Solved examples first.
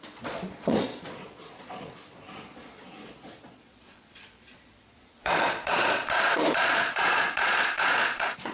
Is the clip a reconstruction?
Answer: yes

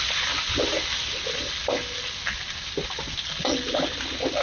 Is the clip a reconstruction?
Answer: no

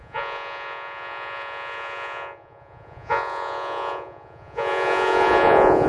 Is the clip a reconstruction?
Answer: yes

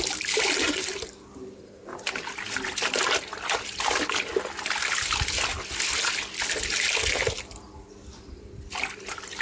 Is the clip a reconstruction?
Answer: no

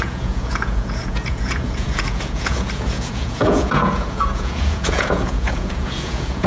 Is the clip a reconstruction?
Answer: yes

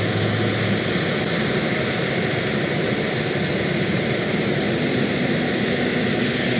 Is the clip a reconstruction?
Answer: no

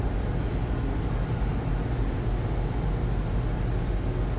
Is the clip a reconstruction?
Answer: no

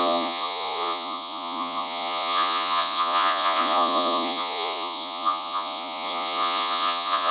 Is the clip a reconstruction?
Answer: yes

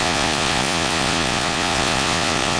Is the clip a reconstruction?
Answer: yes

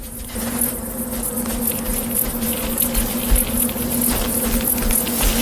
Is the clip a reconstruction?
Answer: no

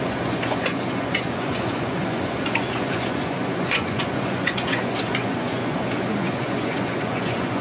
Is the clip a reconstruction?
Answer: yes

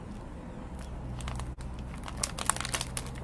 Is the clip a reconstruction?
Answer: no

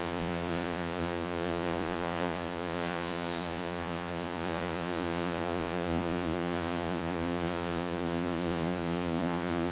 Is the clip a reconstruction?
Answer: yes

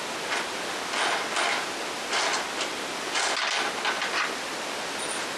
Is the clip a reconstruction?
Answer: no